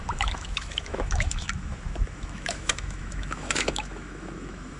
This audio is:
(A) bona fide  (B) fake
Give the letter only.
B